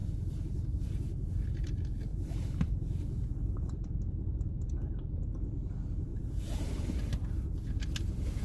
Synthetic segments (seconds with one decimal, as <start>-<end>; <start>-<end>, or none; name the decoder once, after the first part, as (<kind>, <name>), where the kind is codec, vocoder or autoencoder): 0.0-1.7 (vocoder, BigVGAN v2); 2.1-5.3; 6.1-7.1